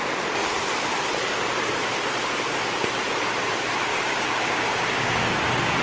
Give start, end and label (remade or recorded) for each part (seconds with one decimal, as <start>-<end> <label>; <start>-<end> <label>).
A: 0.0-3.9 recorded; 3.9-5.8 remade